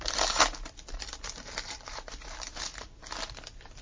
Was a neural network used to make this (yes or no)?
no